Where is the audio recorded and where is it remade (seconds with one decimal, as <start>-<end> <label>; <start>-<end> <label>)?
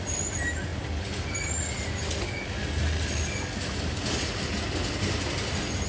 0.0-5.9 recorded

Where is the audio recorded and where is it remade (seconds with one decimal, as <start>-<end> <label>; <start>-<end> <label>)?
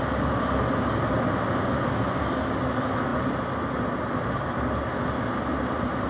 0.0-6.1 recorded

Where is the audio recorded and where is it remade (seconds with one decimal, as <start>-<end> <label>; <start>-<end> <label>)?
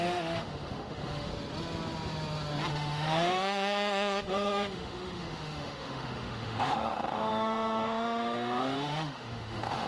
0.0-1.3 remade; 1.3-2.7 recorded; 2.7-9.9 remade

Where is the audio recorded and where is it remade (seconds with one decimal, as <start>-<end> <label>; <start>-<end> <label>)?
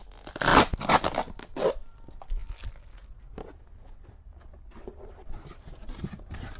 0.0-6.6 recorded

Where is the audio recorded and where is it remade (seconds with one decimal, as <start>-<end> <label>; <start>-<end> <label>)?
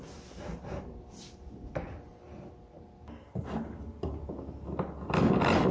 0.0-5.7 recorded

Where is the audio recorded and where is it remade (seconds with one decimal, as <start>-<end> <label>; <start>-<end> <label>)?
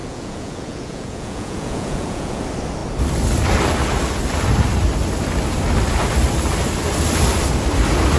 0.0-2.4 remade; 2.4-8.2 recorded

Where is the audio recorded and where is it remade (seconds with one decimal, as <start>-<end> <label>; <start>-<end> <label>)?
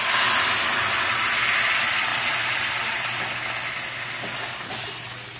0.0-5.4 recorded